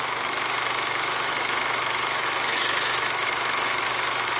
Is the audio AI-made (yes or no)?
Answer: yes